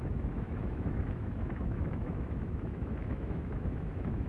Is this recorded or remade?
remade